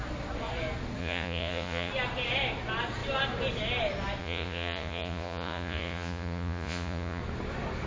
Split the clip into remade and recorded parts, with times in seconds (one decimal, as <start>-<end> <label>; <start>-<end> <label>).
0.0-1.0 recorded; 1.0-1.9 remade; 1.9-4.2 recorded; 4.2-7.2 remade; 7.2-7.9 recorded